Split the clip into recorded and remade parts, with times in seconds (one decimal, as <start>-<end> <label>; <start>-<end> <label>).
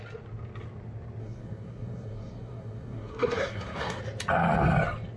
0.0-1.2 recorded; 1.2-4.0 remade; 4.0-5.2 recorded